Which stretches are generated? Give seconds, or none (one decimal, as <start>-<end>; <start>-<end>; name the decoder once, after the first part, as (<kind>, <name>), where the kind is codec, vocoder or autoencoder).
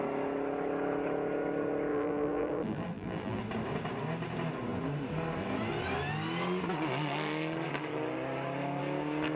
1.9-3.4 (vocoder, BigVGAN v2)